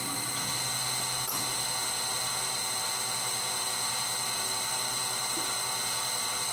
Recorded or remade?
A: recorded